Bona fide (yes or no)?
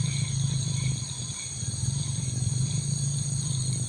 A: yes